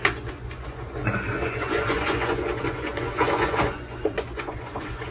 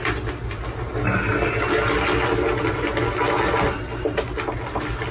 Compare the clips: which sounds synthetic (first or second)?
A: first